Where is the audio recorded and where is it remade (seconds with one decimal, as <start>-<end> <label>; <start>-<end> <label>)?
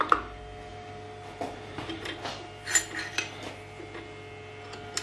0.0-0.7 recorded; 0.7-3.4 remade; 3.4-5.0 recorded